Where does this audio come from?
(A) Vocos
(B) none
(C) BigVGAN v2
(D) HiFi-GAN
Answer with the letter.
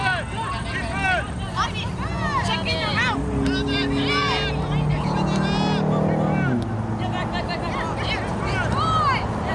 B